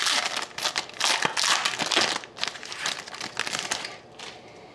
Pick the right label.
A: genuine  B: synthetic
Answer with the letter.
A